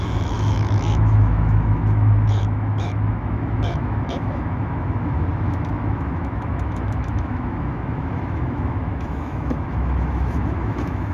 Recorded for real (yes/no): no